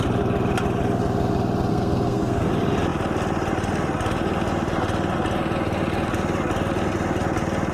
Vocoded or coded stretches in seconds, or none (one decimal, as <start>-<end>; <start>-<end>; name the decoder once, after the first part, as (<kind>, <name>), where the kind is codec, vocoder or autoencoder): 1.7-2.5 (codec, SNAC)